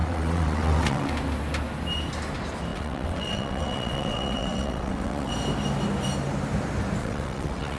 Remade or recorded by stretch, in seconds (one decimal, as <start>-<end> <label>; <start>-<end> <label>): 0.0-1.1 remade; 1.1-2.7 recorded; 2.7-5.3 remade; 5.3-7.0 recorded; 7.0-7.8 remade